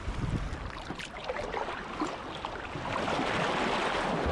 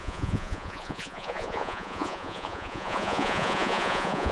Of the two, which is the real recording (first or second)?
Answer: first